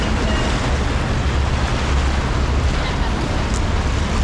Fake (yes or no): no